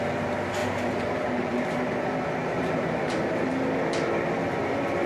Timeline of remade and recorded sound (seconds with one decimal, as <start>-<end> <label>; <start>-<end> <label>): 0.0-0.6 recorded; 0.6-2.0 remade; 2.0-2.4 recorded; 2.4-3.5 remade; 3.5-5.1 recorded